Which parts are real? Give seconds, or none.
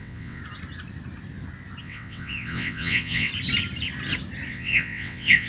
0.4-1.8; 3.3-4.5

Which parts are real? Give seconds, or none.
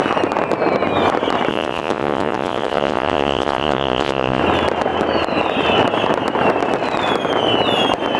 0.0-1.5; 4.4-8.2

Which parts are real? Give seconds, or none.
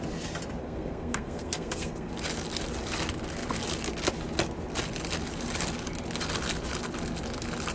0.0-0.6; 2.1-7.7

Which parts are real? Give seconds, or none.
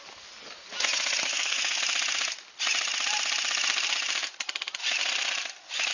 0.0-1.3; 1.8-5.9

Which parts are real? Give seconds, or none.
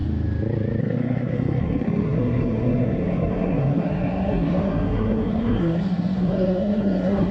0.0-0.8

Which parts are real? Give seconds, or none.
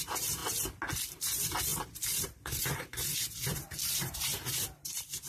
0.4-1.1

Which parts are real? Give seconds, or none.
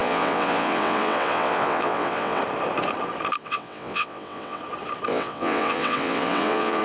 2.4-3.4; 4.6-5.1